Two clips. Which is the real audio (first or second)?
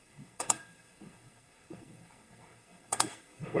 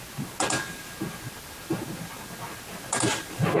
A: second